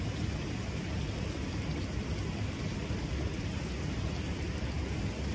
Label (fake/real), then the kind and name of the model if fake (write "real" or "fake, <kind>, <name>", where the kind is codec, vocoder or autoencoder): real